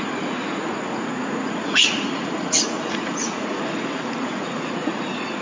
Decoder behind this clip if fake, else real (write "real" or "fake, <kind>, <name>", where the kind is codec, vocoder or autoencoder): fake, vocoder, Vocos